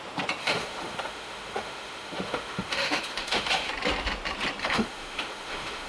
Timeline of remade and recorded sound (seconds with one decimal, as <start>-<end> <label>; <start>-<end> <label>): 0.0-0.4 recorded; 0.4-3.7 remade; 3.7-4.6 recorded; 4.6-5.9 remade